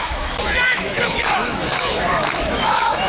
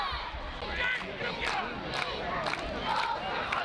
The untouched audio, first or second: second